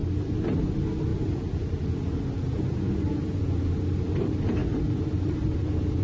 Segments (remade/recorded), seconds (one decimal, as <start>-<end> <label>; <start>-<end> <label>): 0.0-0.7 remade; 0.7-1.1 recorded; 1.1-3.5 remade; 3.5-4.6 recorded; 4.6-5.3 remade; 5.3-6.0 recorded